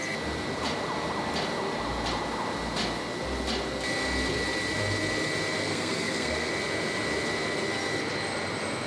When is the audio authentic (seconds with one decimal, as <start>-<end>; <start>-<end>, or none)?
0.0-5.6; 6.5-8.9